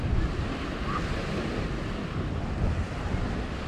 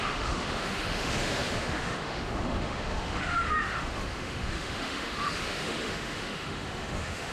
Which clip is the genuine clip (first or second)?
first